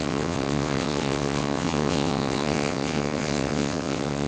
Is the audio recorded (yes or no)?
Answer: no